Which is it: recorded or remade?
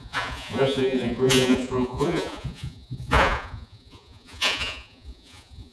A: remade